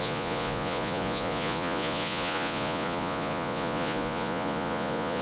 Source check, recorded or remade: remade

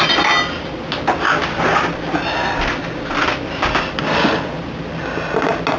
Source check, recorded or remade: recorded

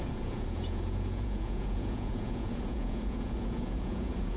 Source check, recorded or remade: remade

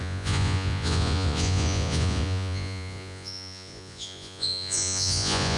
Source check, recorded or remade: remade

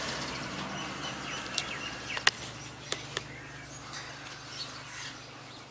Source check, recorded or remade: recorded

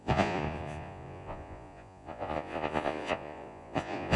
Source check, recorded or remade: remade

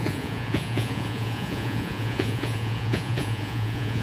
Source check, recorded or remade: remade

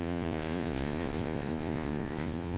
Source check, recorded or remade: remade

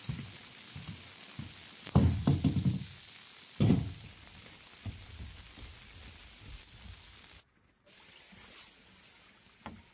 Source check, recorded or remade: recorded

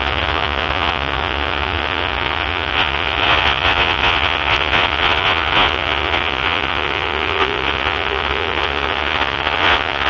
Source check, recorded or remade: remade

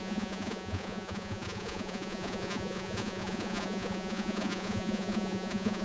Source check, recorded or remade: remade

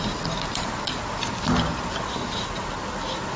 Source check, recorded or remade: recorded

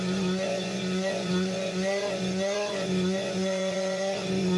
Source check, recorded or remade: remade